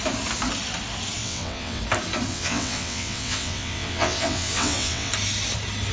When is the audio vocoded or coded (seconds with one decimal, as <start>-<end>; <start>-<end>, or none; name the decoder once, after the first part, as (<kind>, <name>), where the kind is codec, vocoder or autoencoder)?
1.2-1.8 (vocoder, WaveNeXt); 2.3-5.1